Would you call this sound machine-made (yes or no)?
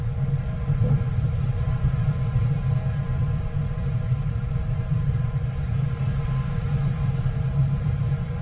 yes